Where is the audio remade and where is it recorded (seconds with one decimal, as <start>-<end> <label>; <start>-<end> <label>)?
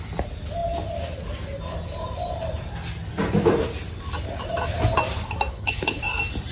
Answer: 0.0-5.5 recorded; 5.5-6.0 remade; 6.0-6.5 recorded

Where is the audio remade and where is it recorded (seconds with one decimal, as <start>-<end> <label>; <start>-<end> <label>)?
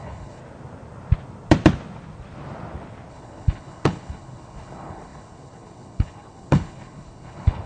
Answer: 0.0-0.4 remade; 0.4-3.1 recorded; 3.1-7.7 remade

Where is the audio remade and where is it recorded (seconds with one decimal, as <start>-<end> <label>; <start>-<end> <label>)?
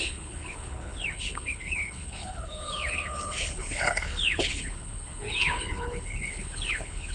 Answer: 0.0-7.1 remade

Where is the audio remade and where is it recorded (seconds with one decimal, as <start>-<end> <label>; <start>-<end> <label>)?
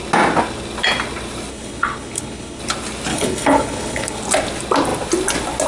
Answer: 0.0-1.5 recorded; 1.5-2.6 remade; 2.6-3.1 recorded; 3.1-4.2 remade; 4.2-5.7 recorded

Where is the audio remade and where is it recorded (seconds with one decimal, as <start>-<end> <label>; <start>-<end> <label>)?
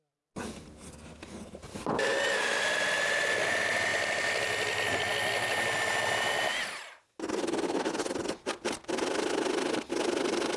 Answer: 0.0-10.6 recorded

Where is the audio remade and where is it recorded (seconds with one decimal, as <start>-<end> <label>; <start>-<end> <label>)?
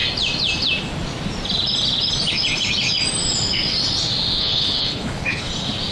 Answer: 0.0-4.4 recorded; 4.4-5.5 remade; 5.5-5.9 recorded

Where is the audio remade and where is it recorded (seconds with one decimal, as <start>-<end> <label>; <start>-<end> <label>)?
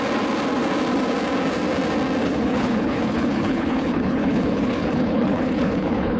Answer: 0.0-2.2 recorded; 2.2-6.2 remade